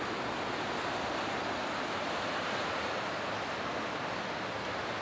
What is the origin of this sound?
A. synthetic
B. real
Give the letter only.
B